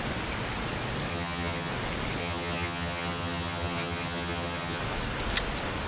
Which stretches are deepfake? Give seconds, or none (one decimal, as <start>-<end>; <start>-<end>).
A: 1.1-1.7; 2.2-4.8